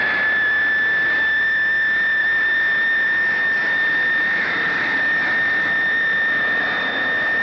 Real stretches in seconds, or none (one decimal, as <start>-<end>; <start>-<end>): 0.0-2.2; 6.6-7.4